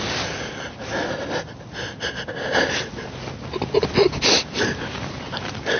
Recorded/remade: recorded